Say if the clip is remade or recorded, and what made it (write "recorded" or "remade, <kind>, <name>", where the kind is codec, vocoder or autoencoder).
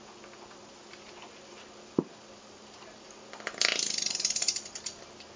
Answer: recorded